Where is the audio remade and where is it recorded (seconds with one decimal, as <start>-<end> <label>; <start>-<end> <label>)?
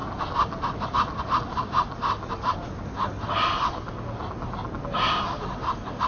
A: 0.0-6.1 recorded